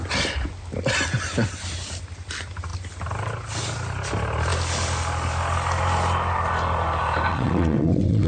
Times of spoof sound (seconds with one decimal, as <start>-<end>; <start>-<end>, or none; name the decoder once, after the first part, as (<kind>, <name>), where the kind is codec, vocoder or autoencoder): 7.3-8.3 (vocoder, WaveNeXt)